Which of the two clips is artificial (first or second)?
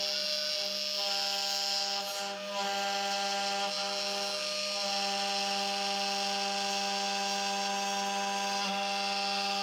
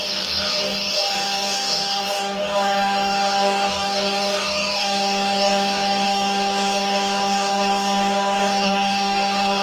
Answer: second